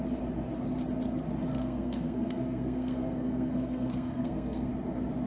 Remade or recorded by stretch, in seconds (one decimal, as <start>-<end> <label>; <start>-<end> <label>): 0.0-1.5 recorded; 1.5-4.7 remade; 4.7-5.3 recorded